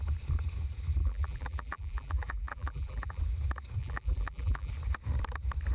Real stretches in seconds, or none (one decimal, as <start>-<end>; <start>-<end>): 0.0-1.0; 3.2-3.8; 4.7-5.7